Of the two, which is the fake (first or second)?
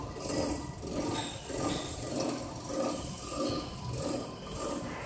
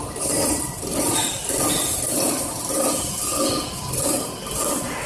second